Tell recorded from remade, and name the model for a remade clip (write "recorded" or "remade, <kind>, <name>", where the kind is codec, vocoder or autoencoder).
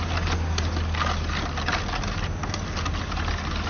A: recorded